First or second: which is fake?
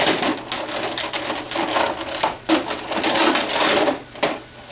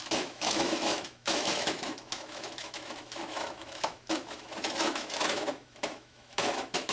second